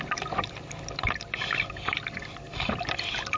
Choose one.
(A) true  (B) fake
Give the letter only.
A